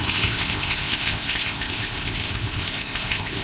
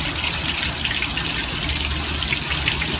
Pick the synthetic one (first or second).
first